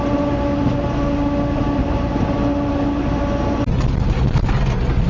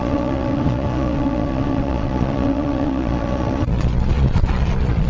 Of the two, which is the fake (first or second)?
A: second